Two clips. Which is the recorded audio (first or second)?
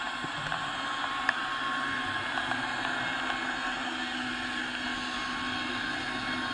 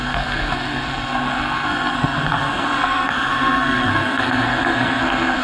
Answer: first